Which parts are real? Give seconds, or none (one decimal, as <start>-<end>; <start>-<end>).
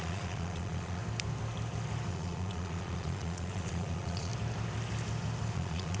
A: 1.0-2.1; 4.3-5.5